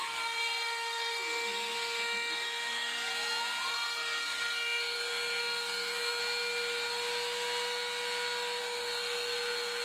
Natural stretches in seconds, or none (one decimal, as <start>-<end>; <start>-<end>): 3.1-3.7; 6.2-8.6